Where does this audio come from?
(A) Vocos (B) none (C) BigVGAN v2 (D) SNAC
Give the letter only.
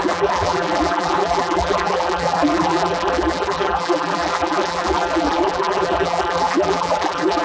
C